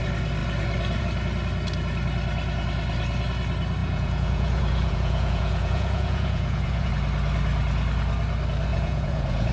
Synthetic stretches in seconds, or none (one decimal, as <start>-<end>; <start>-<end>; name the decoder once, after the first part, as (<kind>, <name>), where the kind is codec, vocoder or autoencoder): 3.8-6.9 (vocoder, Vocos); 8.7-9.5